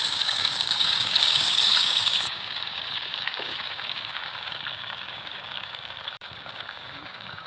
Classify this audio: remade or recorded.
remade